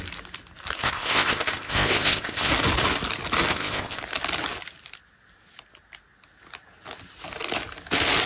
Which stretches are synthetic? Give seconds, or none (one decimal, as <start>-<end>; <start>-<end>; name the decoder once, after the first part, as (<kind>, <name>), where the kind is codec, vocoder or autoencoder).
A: 0.8-2.5 (codec, ZipCodec); 3.5-4.0